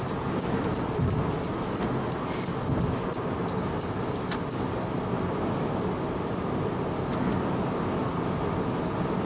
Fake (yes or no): no